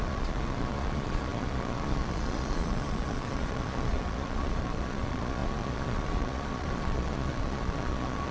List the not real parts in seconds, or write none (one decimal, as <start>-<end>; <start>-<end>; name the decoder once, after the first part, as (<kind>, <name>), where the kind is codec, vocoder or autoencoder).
0.0-8.3 (vocoder, Vocos)